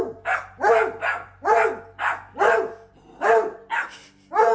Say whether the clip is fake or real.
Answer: real